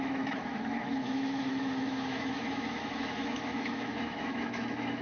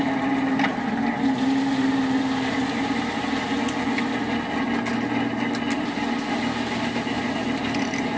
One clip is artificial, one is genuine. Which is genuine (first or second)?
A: second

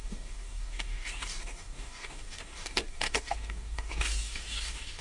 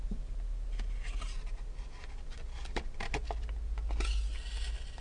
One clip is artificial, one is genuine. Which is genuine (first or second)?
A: second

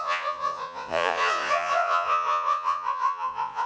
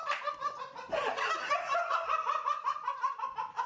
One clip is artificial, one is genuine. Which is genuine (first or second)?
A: second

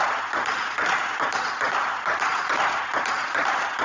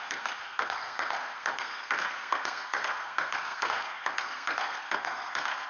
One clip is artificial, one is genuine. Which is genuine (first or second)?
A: first